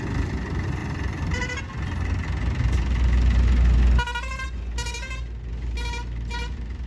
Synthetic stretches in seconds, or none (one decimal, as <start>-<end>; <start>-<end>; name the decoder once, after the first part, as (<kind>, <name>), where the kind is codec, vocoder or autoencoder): 0.8-1.6 (vocoder, BigVGAN v2)